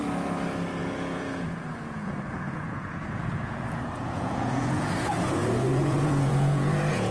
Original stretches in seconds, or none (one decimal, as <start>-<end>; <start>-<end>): 0.0-0.8; 4.9-5.4